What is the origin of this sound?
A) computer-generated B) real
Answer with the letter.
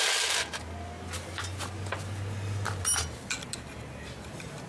B